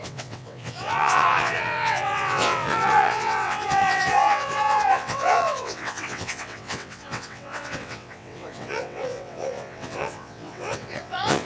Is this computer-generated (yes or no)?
yes